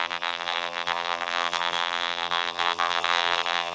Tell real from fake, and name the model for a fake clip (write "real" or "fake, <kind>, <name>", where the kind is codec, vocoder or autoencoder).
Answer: fake, vocoder, BigVGAN v2